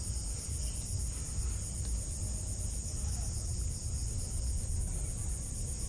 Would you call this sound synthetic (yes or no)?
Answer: no